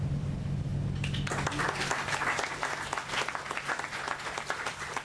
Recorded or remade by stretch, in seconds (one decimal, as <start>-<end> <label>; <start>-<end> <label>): 0.0-0.7 remade; 0.7-3.7 recorded; 3.7-5.0 remade